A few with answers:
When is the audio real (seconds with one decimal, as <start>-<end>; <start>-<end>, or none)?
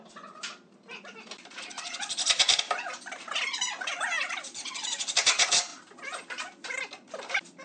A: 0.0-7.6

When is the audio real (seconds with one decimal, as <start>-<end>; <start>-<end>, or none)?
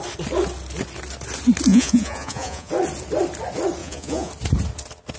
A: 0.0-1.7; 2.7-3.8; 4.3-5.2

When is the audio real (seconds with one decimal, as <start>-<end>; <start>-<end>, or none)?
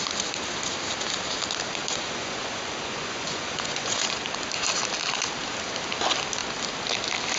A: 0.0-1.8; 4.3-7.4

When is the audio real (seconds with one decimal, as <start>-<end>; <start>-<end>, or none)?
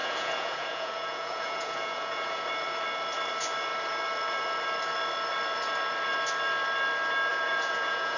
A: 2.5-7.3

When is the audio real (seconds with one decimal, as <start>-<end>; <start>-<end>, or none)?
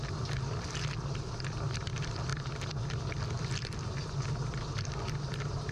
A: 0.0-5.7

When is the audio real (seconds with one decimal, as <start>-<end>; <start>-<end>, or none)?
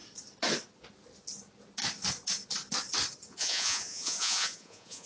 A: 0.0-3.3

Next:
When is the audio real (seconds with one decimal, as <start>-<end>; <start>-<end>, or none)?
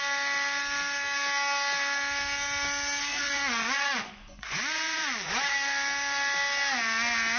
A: 0.0-3.1; 5.3-7.4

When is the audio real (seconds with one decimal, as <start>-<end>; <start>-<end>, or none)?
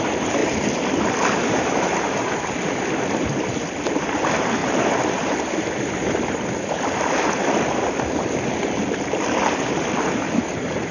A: 0.0-10.9